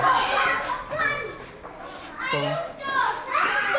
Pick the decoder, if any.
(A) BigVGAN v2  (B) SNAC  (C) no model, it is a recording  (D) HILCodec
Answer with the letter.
C